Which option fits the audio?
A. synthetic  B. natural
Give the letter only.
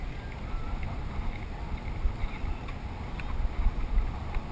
B